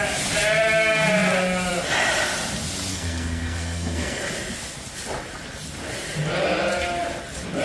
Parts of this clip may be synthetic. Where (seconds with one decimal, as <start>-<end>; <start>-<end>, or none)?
2.9-4.2